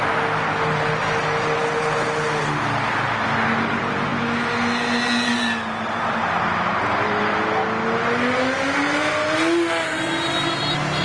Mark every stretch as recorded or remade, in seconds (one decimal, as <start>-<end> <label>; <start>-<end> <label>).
0.0-11.0 recorded